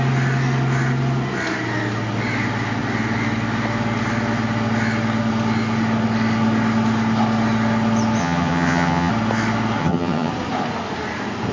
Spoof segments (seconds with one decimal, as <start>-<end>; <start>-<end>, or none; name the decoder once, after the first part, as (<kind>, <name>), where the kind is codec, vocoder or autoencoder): 8.2-9.1 (vocoder, HiFi-GAN); 9.8-10.3